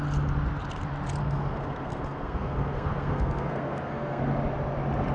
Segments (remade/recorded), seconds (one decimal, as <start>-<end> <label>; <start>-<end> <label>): 0.0-1.2 recorded; 1.2-4.2 remade; 4.2-5.1 recorded